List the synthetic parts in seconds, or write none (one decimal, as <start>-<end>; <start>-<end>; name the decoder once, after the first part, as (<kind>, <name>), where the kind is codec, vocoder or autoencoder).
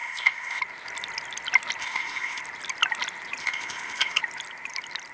0.0-0.6 (codec, ZipCodec); 1.8-2.4; 3.4-4.2